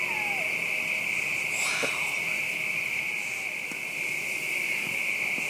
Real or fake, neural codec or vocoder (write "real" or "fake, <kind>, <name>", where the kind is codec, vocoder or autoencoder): real